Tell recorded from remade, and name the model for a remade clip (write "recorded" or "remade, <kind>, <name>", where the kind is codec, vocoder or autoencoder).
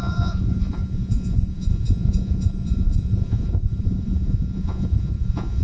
remade, vocoder, Vocos